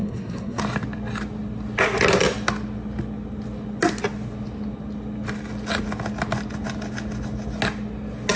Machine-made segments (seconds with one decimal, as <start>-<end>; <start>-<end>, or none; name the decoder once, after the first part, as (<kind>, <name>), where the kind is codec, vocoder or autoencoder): 0.0-0.6 (codec, SNAC)